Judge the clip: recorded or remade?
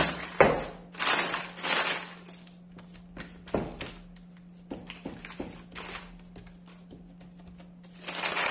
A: recorded